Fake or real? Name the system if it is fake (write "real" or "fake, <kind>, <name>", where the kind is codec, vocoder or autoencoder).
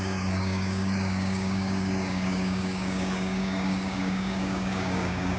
fake, codec, DAC